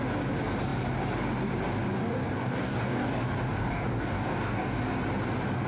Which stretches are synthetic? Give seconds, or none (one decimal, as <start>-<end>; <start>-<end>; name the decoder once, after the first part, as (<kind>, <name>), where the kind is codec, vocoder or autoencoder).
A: 2.2-3.1 (codec, DAC); 3.6-4.8